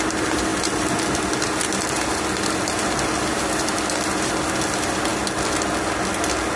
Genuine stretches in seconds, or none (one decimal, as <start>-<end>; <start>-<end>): 0.0-6.6